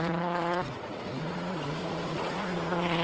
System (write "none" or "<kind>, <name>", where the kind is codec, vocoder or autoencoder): vocoder, Vocos